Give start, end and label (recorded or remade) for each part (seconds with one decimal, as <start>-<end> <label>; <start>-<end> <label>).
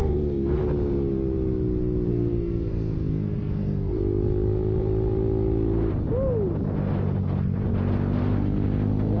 0.0-0.6 remade; 0.6-2.1 recorded; 2.1-4.0 remade; 4.0-9.2 recorded